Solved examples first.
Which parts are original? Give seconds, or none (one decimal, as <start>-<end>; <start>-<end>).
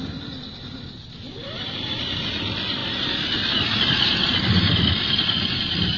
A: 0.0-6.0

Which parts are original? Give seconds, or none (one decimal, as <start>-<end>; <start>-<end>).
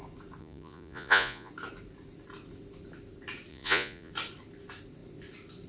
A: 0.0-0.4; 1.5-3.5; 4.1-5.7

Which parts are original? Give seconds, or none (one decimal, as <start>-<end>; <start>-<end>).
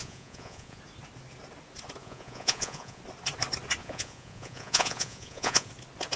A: 0.8-2.0; 3.0-3.8; 5.7-6.2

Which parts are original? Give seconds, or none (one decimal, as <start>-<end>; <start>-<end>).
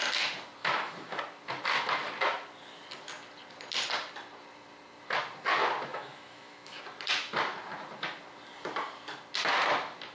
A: 0.0-0.6; 1.2-5.9; 6.8-10.1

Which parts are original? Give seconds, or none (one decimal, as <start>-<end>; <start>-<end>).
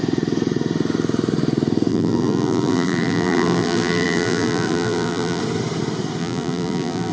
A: 0.0-1.9; 5.4-6.2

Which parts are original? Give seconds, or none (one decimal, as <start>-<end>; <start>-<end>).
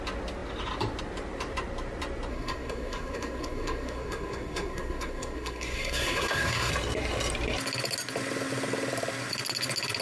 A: 0.0-2.3; 6.7-10.0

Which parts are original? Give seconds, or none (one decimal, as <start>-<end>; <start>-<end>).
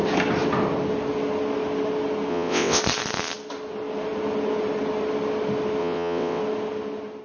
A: 0.0-2.3; 2.8-5.8; 6.4-7.2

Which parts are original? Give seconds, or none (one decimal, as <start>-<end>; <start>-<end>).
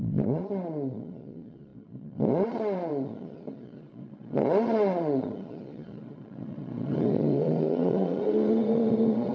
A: none